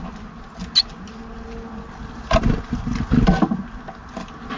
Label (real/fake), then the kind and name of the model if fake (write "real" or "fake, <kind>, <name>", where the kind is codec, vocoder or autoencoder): real